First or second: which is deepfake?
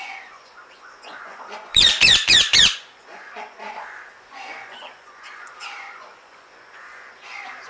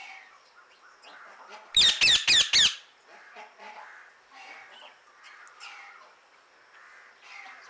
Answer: first